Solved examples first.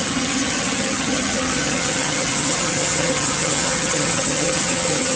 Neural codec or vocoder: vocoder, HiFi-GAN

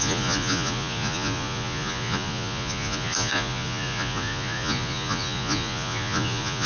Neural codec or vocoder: vocoder, Vocos